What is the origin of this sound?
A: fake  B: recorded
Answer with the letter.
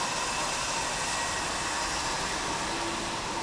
B